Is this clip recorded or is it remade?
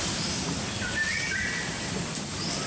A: recorded